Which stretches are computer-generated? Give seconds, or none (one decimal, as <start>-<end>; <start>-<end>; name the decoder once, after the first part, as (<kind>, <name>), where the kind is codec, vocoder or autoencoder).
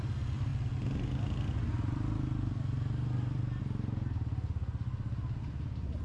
none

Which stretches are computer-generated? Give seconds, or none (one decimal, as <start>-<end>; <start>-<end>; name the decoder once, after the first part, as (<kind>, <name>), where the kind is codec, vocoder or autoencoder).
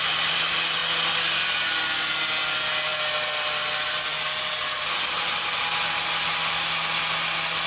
none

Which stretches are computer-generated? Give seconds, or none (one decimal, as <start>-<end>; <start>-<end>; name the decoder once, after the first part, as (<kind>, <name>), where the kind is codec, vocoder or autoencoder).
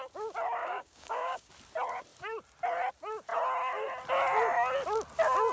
0.6-1.5 (codec, DAC)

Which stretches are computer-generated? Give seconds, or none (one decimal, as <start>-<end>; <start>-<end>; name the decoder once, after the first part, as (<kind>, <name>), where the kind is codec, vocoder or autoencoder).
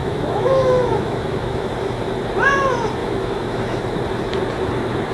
0.0-1.7 (autoencoder, DAC-VAE); 3.0-3.8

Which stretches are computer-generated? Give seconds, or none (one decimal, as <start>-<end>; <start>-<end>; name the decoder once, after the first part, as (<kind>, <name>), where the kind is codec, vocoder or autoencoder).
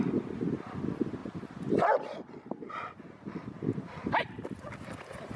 none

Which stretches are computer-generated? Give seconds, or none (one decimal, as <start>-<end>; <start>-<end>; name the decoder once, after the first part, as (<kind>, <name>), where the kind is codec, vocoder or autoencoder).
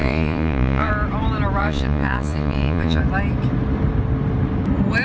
0.0-0.9 (vocoder, Vocos); 1.6-3.0